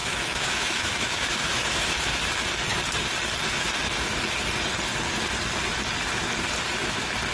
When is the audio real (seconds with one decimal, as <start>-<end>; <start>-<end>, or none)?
2.2-7.3